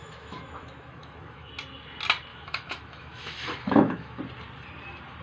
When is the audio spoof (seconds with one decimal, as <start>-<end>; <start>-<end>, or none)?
0.0-1.5; 2.3-4.2